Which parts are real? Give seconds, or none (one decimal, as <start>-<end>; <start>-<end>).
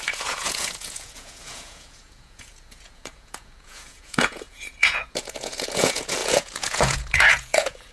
none